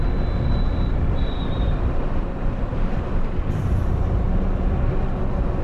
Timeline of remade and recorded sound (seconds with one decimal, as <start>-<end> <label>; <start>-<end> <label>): 0.0-0.9 recorded; 0.9-4.3 remade; 4.3-5.6 recorded